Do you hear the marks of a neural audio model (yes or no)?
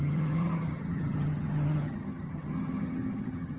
yes